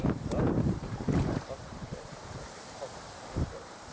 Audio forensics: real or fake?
fake